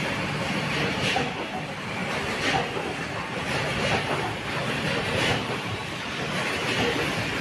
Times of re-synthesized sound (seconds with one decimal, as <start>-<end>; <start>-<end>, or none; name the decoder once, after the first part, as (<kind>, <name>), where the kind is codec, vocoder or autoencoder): 0.0-2.0 (vocoder, BigVGAN v2); 3.7-5.8; 6.5-7.4